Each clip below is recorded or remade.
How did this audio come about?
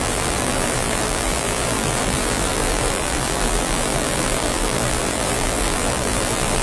remade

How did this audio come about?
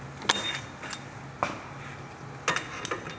recorded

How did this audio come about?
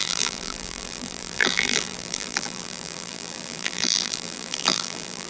remade